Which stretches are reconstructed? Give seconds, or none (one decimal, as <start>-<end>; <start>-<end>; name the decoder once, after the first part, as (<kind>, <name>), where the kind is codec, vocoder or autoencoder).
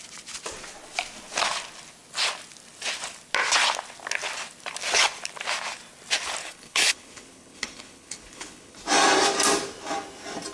6.4-8.8 (codec, HILCodec)